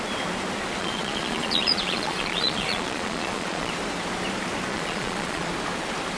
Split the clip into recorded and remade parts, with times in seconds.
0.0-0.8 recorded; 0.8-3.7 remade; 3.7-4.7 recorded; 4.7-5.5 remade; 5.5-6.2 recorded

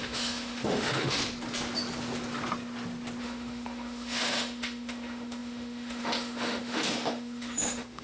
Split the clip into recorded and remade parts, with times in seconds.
0.0-1.2 remade; 1.2-3.2 recorded; 3.2-8.0 remade

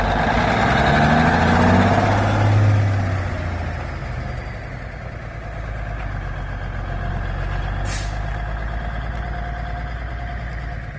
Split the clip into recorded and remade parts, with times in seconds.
0.0-11.0 recorded

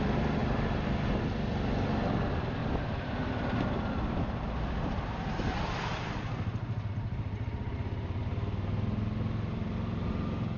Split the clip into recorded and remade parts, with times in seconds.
0.0-10.6 recorded

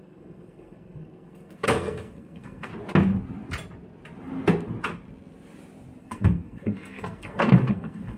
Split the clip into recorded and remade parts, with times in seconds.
0.0-2.7 remade; 2.7-6.0 recorded; 6.0-8.2 remade

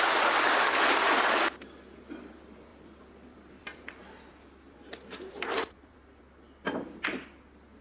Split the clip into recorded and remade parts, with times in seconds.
0.0-2.7 recorded; 2.7-6.2 remade; 6.2-7.8 recorded

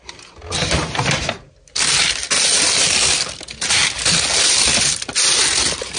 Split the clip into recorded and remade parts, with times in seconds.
0.0-6.0 recorded

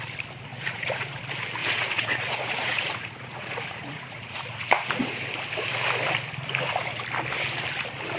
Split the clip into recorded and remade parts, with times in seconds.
0.0-0.5 recorded; 0.5-1.2 remade; 1.2-1.6 recorded; 1.6-5.2 remade; 5.2-8.2 recorded